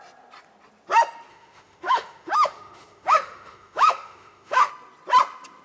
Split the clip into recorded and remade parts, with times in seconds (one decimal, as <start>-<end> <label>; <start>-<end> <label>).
0.0-1.3 recorded; 1.3-4.7 remade; 4.7-5.6 recorded